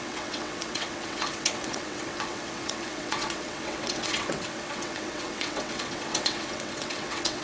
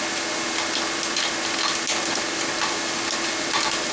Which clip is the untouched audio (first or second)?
second